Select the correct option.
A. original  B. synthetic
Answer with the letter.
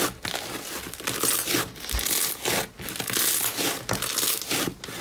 A